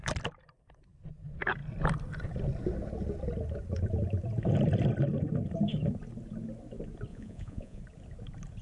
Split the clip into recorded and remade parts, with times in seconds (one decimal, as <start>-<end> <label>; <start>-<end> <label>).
0.0-7.1 recorded; 7.1-7.8 remade; 7.8-8.6 recorded